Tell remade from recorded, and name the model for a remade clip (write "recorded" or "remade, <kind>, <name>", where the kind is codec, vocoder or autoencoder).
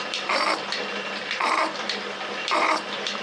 recorded